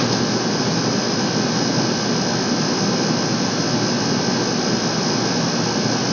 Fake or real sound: real